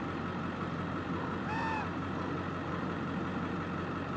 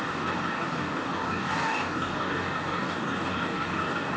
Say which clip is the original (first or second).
first